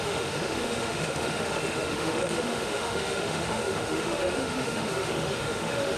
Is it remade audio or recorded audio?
remade